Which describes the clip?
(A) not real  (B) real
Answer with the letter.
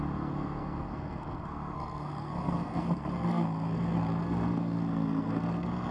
A